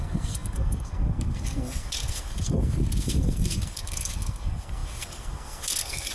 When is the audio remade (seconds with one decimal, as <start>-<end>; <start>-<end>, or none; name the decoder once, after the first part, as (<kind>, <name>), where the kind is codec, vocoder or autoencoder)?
0.0-6.1 (codec, SNAC)